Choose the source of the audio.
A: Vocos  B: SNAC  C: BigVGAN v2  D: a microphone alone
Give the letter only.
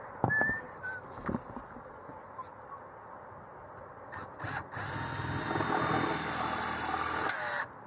D